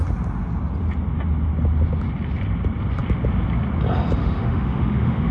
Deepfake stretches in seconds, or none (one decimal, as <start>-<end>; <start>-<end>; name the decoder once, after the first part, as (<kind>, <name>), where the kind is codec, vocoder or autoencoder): 4.2-5.3 (autoencoder, DAC-VAE)

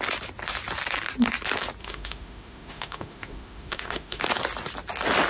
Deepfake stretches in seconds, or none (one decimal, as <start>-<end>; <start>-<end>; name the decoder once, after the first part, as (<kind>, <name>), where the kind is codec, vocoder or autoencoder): 1.8-4.2 (autoencoder, DAC-VAE)

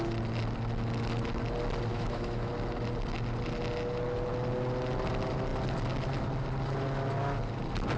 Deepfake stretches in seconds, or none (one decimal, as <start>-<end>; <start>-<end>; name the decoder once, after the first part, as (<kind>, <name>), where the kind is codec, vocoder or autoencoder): 1.9-2.5 (autoencoder, DAC-VAE)

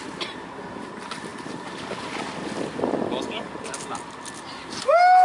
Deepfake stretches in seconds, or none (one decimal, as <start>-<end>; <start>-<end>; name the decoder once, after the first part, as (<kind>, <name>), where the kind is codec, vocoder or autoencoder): none

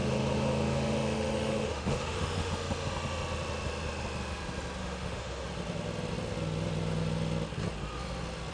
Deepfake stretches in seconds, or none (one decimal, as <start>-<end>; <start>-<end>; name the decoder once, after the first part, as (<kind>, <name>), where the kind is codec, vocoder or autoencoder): 0.0-2.5 (autoencoder, DAC-VAE); 4.8-5.5

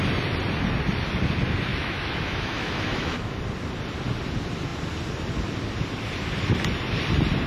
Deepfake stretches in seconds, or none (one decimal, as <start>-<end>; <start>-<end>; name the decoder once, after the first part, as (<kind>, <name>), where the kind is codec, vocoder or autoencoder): 1.7-3.4 (autoencoder, DAC-VAE)

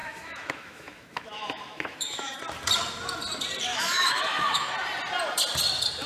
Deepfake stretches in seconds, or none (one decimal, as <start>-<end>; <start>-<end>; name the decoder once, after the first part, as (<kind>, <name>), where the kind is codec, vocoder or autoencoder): 0.0-2.4 (autoencoder, DAC-VAE); 3.7-4.7